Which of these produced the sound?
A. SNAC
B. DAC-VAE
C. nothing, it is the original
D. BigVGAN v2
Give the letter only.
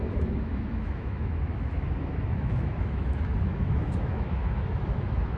B